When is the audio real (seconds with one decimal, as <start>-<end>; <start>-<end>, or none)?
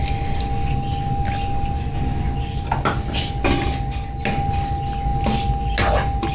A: 0.0-6.3